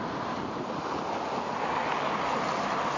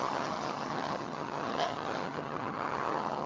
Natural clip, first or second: first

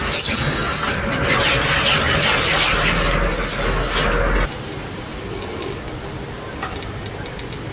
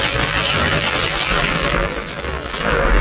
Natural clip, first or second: first